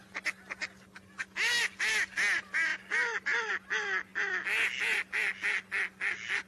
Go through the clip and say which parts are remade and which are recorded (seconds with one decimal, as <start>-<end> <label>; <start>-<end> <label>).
0.0-6.5 recorded